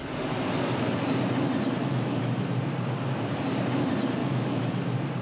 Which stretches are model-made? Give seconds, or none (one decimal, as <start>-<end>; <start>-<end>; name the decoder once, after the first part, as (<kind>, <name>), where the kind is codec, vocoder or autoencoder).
1.8-2.4 (autoencoder, DAC-VAE); 4.2-4.7